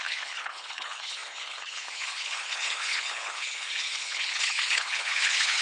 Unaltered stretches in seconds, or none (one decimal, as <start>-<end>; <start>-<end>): none